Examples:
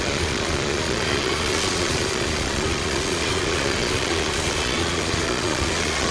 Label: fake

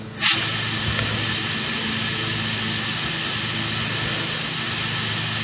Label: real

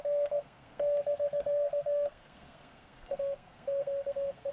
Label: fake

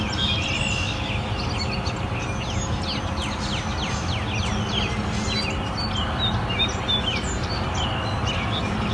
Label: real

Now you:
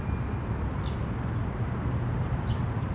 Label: real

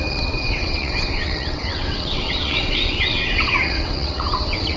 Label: fake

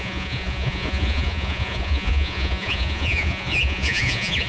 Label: fake